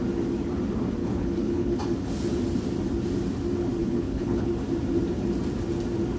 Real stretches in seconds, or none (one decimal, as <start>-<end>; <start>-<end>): 0.0-1.0; 1.8-3.8; 4.5-6.2